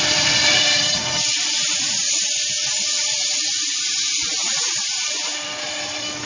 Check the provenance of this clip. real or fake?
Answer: fake